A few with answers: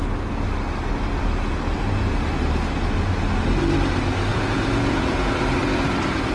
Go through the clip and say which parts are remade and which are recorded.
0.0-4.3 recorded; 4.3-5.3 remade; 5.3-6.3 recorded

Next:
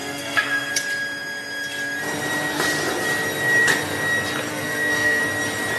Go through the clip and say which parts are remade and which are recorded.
0.0-0.7 remade; 0.7-4.5 recorded; 4.5-5.2 remade; 5.2-5.8 recorded

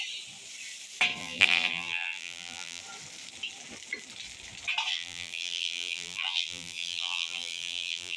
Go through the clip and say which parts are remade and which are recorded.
0.0-1.2 recorded; 1.2-2.8 remade; 2.8-4.9 recorded; 4.9-8.2 remade

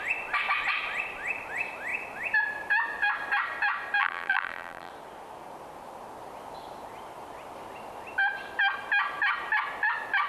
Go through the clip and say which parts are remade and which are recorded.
0.0-4.0 recorded; 4.0-4.9 remade; 4.9-10.3 recorded